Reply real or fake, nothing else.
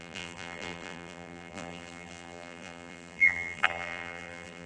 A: fake